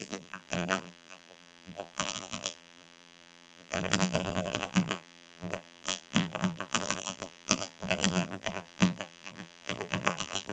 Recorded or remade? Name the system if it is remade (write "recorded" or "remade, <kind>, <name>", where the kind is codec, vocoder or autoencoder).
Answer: remade, vocoder, BigVGAN v2